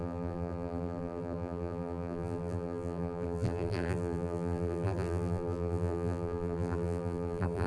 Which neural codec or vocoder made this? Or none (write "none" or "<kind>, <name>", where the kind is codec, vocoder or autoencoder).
vocoder, BigVGAN v2